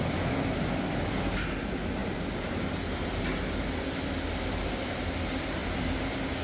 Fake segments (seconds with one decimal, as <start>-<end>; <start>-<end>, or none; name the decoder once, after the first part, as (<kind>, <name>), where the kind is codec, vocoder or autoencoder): none